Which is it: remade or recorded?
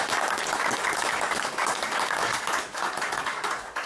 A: remade